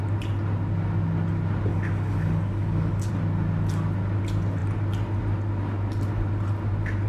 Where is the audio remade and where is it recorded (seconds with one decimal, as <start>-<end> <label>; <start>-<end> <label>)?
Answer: 0.0-1.7 recorded; 1.7-3.1 remade; 3.1-7.1 recorded